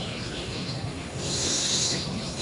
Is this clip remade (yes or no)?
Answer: yes